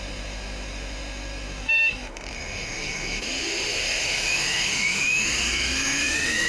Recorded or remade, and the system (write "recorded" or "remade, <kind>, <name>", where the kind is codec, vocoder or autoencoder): remade, autoencoder, DAC-VAE